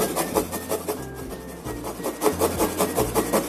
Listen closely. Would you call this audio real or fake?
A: real